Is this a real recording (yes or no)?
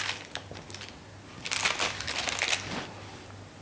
yes